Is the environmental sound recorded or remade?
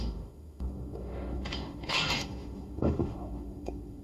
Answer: remade